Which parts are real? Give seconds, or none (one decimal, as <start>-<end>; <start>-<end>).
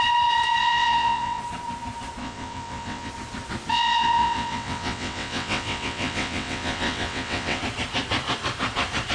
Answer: 0.0-0.6; 1.4-2.2; 3.1-3.7; 7.6-9.1